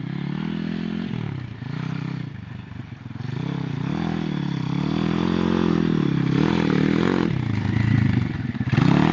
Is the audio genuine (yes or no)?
yes